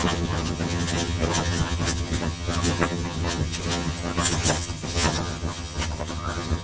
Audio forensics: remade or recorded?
remade